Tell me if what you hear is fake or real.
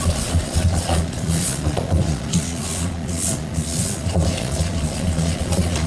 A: fake